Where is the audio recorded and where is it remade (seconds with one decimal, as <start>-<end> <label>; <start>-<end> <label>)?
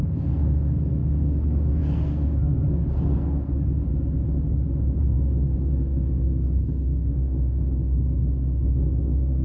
0.0-3.9 remade; 3.9-5.0 recorded; 5.0-9.4 remade